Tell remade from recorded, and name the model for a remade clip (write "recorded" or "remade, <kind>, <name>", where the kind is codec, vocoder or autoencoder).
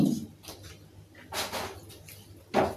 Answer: recorded